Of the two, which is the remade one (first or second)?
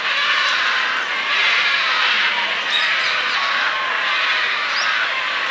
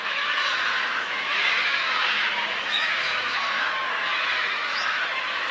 second